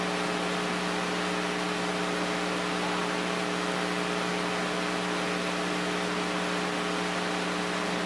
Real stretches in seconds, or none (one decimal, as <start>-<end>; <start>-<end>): 0.0-8.1